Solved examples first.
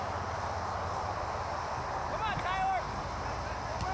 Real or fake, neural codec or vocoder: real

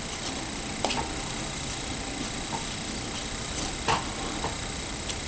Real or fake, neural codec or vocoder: real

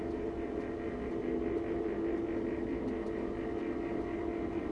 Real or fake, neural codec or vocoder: real